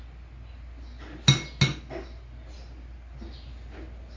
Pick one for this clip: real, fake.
real